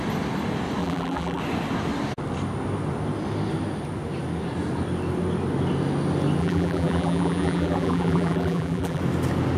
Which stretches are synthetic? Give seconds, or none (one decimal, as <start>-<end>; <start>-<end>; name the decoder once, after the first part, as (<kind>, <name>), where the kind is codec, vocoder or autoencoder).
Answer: 0.8-1.4 (vocoder, BigVGAN v2); 6.4-9.0